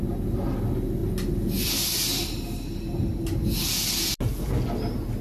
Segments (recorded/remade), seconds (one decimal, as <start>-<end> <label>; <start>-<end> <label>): 0.0-5.2 recorded